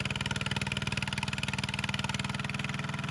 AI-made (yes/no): no